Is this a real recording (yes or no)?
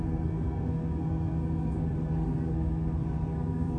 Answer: no